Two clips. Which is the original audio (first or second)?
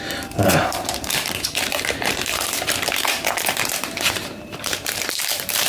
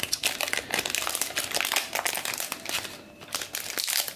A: second